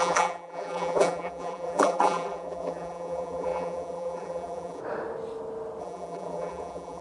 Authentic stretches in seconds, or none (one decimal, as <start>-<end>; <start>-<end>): 4.8-5.8